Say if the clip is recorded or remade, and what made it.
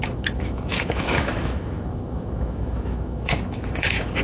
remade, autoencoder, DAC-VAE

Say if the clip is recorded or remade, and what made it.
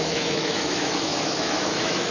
remade, autoencoder, DAC-VAE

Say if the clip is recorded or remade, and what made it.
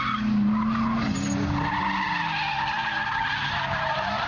recorded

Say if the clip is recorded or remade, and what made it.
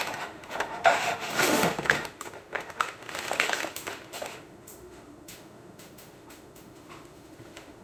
remade, autoencoder, DAC-VAE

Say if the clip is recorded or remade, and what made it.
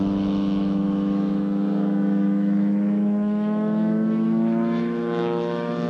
remade, autoencoder, DAC-VAE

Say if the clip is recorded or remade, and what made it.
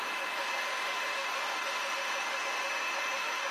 remade, autoencoder, DAC-VAE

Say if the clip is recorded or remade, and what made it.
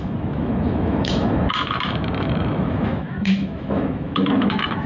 remade, autoencoder, DAC-VAE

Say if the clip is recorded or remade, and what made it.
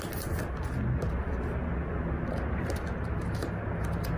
recorded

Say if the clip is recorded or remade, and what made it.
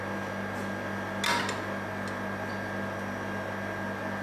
recorded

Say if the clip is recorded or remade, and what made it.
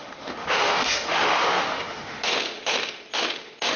remade, autoencoder, DAC-VAE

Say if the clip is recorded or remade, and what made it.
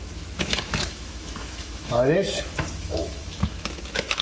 remade, autoencoder, DAC-VAE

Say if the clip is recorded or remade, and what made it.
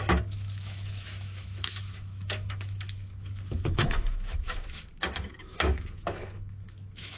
remade, autoencoder, DAC-VAE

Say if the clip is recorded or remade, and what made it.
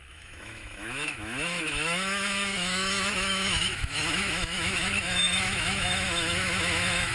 remade, autoencoder, DAC-VAE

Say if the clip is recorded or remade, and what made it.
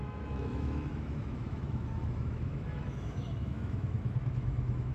remade, autoencoder, DAC-VAE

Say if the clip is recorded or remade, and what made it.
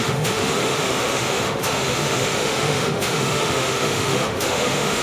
remade, autoencoder, DAC-VAE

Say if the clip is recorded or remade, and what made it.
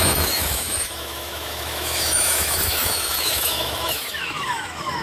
remade, autoencoder, DAC-VAE